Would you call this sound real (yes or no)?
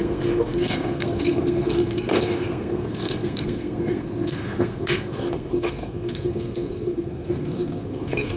no